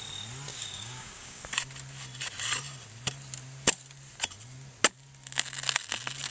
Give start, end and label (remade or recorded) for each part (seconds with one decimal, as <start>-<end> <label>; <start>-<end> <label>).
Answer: 0.0-0.5 recorded; 0.5-1.4 remade; 1.4-6.3 recorded